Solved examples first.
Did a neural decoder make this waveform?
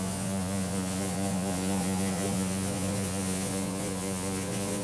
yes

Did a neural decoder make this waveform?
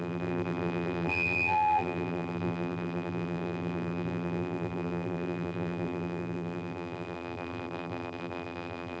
yes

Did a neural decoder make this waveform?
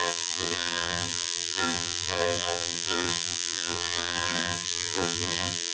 yes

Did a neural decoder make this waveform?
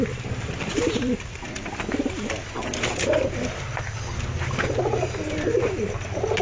no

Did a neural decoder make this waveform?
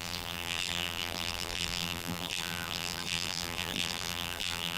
yes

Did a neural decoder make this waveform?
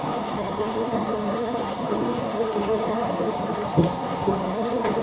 yes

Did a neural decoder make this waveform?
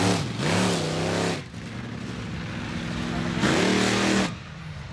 no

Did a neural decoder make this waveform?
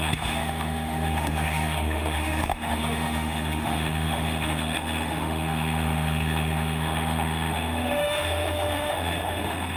yes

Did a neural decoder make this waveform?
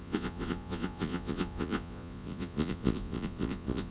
yes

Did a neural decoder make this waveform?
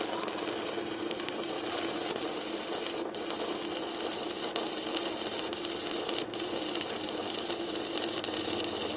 no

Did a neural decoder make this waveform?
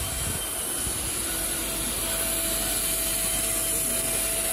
no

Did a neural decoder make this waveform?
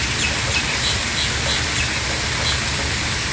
no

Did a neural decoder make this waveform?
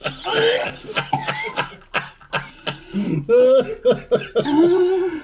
no